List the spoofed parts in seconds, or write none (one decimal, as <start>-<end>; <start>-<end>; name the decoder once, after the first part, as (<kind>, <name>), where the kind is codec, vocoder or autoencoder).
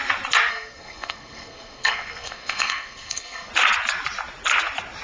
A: 0.5-3.5 (codec, SNAC)